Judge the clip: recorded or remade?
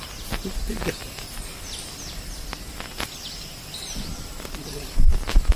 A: recorded